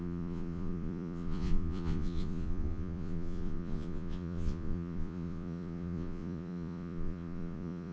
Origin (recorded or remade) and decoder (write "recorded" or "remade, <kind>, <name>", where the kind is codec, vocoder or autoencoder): remade, vocoder, Vocos